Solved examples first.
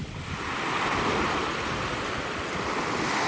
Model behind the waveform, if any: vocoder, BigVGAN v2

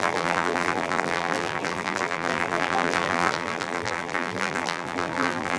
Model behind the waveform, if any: vocoder, BigVGAN v2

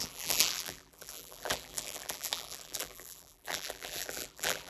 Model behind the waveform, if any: vocoder, BigVGAN v2